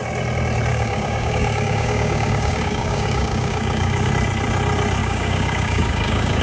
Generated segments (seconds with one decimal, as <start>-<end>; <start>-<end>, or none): 0.7-4.1; 5.0-6.4